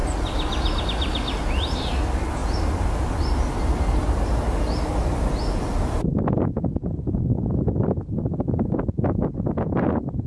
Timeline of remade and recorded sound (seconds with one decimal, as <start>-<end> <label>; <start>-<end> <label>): 0.0-10.3 recorded